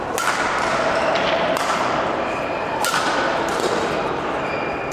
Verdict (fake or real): real